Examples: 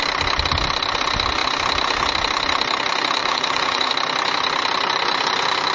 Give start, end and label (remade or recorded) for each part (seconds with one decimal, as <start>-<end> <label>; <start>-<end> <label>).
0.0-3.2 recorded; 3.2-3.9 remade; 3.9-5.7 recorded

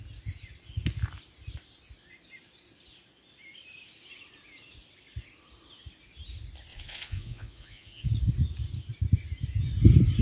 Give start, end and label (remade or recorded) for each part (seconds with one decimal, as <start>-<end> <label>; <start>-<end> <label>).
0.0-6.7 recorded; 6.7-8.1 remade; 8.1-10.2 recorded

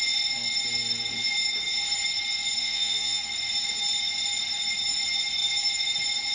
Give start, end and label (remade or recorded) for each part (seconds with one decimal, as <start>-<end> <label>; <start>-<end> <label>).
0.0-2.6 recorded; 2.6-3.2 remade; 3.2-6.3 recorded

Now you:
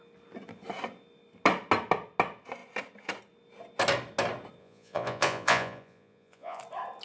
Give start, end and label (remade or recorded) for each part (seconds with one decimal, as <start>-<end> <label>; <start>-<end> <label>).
0.0-4.6 recorded; 4.6-6.6 remade; 6.6-7.0 recorded